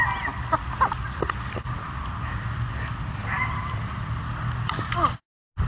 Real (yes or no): yes